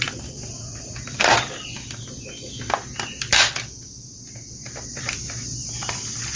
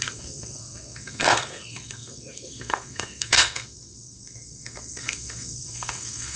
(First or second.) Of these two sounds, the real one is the first